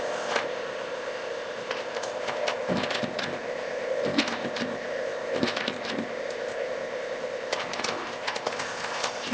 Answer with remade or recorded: remade